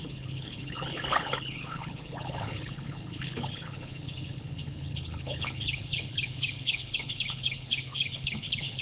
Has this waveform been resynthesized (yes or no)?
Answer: yes